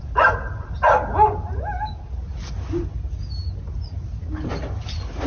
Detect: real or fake real